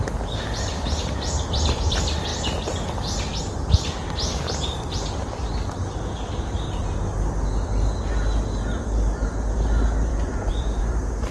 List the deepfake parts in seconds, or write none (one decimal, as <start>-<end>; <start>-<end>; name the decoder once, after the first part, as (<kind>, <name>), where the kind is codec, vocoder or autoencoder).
10.1-10.9 (vocoder, Vocos)